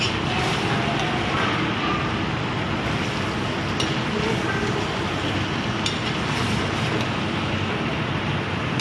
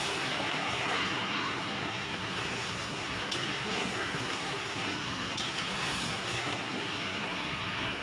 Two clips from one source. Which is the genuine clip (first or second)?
first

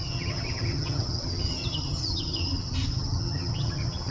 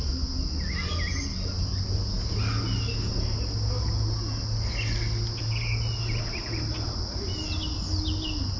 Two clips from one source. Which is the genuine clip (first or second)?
second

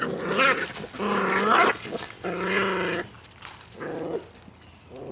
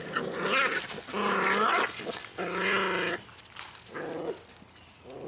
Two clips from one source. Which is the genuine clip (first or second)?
second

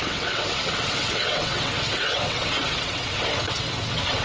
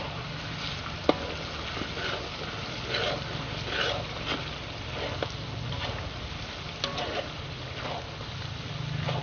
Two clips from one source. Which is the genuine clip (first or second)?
second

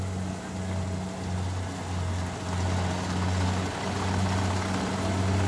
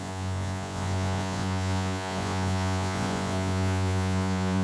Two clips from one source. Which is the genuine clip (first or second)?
first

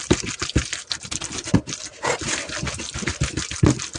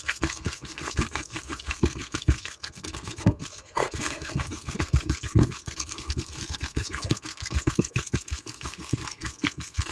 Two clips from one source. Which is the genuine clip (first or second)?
first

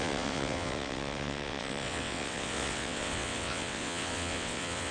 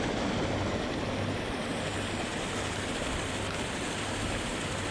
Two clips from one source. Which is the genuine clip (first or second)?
second